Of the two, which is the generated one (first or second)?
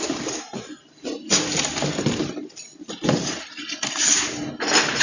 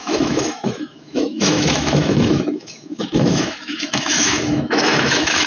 second